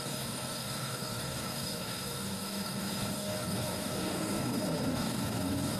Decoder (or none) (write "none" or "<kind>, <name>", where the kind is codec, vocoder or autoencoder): codec, DAC